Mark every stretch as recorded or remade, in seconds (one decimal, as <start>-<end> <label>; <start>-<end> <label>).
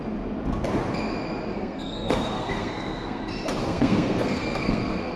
0.0-1.5 recorded; 1.5-3.2 remade; 3.2-3.6 recorded; 3.6-5.2 remade